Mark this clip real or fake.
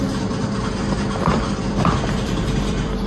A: fake